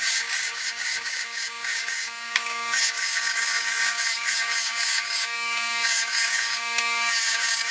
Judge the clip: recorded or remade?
remade